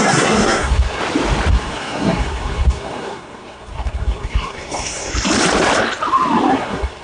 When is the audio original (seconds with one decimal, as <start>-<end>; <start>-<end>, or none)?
1.0-1.5; 5.1-6.5